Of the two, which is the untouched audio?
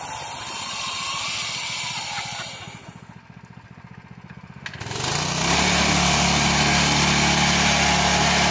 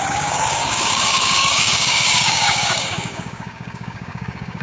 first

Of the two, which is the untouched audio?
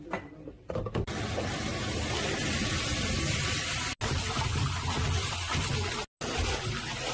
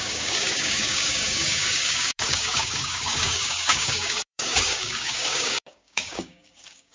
first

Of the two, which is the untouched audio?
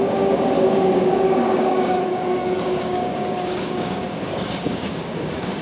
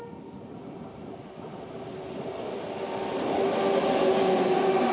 second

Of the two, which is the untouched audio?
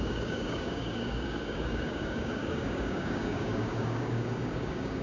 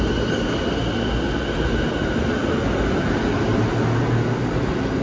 second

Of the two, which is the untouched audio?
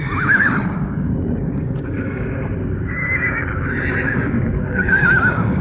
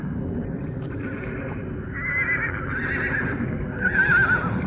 second